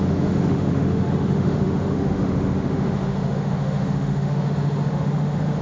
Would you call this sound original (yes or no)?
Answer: no